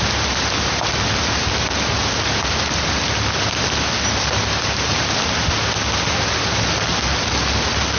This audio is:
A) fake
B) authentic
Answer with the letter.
B